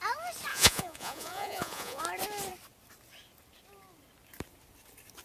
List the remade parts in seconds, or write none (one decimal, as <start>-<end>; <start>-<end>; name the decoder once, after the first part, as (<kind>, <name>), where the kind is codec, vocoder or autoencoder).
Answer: 0.5-2.0 (vocoder, Vocos)

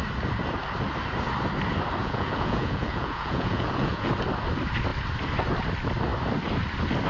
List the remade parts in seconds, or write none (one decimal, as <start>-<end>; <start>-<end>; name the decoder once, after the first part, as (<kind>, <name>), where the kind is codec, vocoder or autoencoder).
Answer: 2.0-4.1 (vocoder, Vocos)

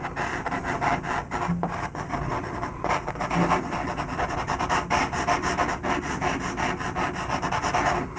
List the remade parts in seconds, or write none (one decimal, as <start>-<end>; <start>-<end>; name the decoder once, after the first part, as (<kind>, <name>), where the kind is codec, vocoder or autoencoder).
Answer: none

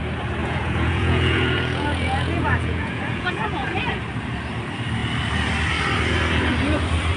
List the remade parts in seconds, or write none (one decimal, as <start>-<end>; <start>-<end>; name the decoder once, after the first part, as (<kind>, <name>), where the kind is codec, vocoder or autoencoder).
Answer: 0.4-3.9 (vocoder, Vocos)

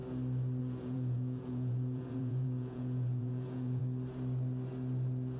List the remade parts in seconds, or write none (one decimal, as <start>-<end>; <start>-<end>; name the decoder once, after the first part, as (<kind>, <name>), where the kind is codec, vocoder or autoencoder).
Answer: 0.6-3.8 (vocoder, Vocos)

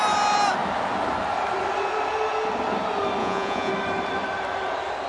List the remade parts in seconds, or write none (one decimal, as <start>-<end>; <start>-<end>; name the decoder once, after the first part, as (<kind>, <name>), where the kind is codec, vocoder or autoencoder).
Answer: 3.2-3.7 (vocoder, Vocos)

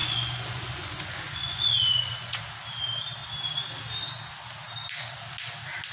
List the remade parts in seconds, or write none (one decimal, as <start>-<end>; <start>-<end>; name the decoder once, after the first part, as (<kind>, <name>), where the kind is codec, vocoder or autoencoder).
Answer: 0.0-2.4 (vocoder, Vocos)